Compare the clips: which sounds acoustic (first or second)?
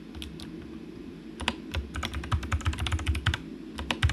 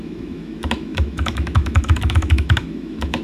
first